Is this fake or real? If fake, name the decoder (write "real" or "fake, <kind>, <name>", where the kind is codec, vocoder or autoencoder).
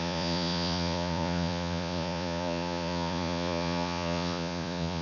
fake, vocoder, Vocos